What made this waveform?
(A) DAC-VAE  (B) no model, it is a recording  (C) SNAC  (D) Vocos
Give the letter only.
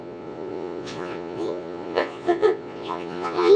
D